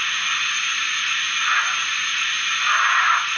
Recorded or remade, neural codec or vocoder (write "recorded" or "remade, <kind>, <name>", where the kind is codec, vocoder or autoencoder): recorded